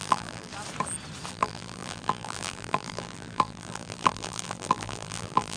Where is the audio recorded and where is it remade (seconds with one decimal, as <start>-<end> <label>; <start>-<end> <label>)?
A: 0.0-0.5 remade; 0.5-1.3 recorded; 1.3-5.6 remade